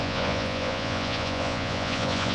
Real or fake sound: fake